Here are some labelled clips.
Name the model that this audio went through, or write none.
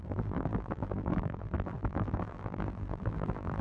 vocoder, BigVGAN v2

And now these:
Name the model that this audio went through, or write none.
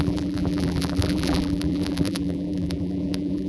vocoder, BigVGAN v2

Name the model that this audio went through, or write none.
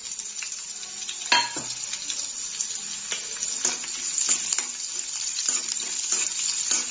none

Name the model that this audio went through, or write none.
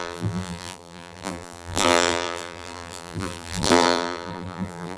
vocoder, BigVGAN v2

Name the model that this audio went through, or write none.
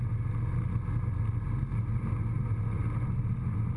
none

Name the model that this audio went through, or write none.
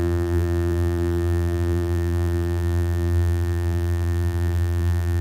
vocoder, BigVGAN v2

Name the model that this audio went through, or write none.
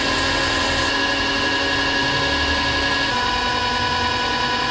none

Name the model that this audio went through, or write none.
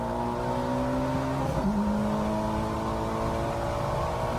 none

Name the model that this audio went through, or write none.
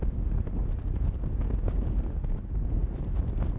none